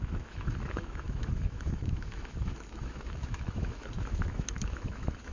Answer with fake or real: fake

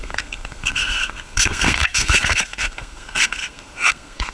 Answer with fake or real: fake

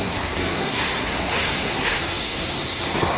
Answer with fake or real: fake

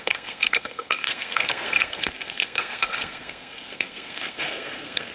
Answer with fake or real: fake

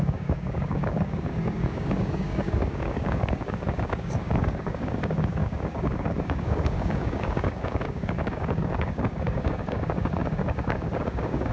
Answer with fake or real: fake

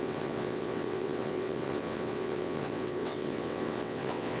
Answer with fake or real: fake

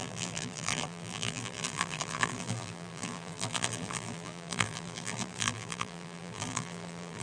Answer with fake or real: fake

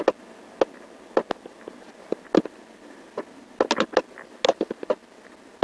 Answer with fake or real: real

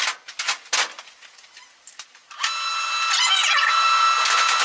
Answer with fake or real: real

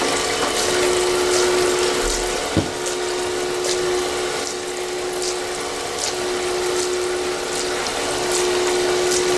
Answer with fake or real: real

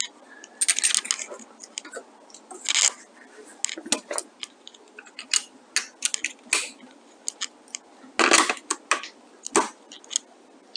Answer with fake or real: real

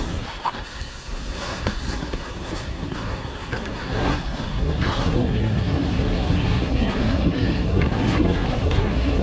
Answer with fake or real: fake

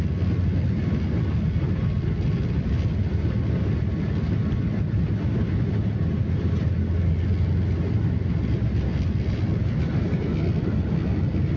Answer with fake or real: real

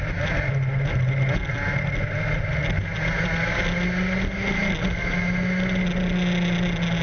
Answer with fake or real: real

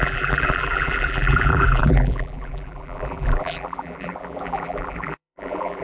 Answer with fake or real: fake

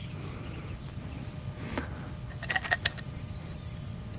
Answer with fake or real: real